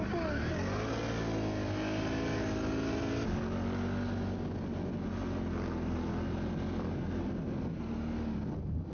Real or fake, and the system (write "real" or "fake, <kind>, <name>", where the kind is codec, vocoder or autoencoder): real